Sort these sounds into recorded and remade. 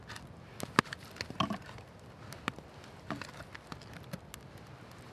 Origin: recorded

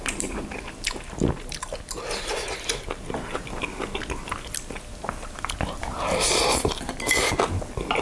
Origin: recorded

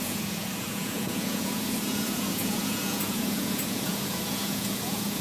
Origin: remade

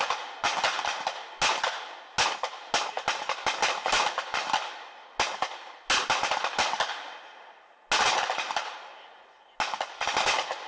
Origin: recorded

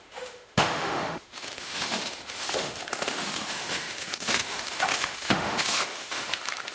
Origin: remade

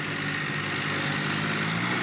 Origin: recorded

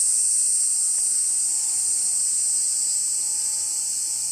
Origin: recorded